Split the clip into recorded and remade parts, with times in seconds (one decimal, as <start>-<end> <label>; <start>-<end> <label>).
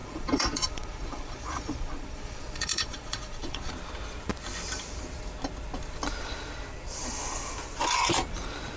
0.0-3.7 remade; 3.7-8.8 recorded